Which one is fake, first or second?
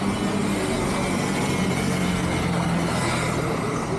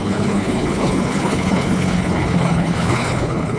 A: second